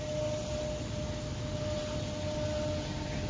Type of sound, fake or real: real